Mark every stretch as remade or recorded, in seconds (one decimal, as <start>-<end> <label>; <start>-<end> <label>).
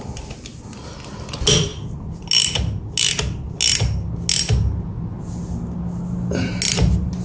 0.0-7.2 recorded